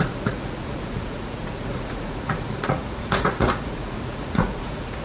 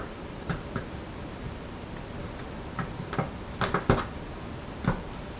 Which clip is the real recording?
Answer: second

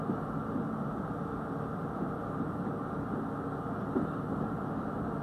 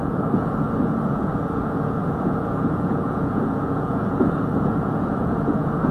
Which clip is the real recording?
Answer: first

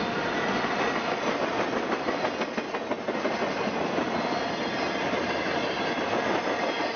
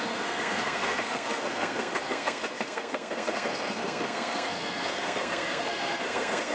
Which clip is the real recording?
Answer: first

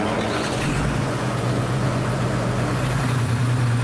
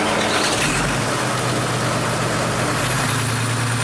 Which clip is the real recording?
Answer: second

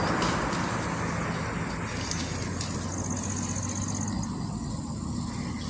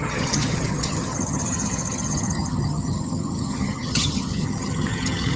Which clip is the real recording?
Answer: first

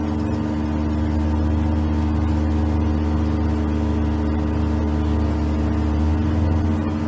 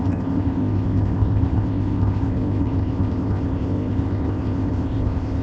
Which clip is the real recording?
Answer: first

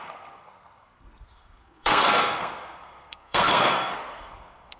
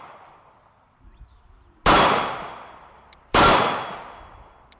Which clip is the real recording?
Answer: second